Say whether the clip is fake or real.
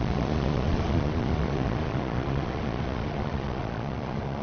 fake